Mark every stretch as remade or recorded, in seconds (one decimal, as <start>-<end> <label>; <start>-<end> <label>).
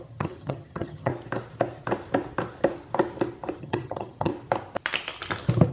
0.0-1.1 remade; 1.1-3.6 recorded; 3.6-4.3 remade; 4.3-5.7 recorded